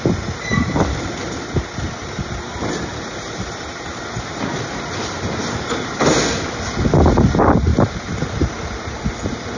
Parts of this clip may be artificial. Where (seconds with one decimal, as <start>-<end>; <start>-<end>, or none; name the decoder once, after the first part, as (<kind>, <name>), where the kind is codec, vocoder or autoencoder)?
2.0-6.2 (vocoder, BigVGAN v2); 7.7-8.3